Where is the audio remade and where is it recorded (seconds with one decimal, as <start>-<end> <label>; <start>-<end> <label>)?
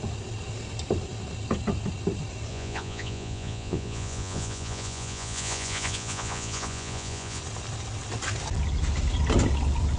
0.0-2.5 recorded; 2.5-7.4 remade; 7.4-10.0 recorded